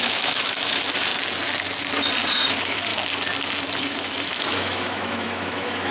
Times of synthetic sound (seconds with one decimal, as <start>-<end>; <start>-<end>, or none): 0.0-1.1; 2.5-2.9; 3.9-5.9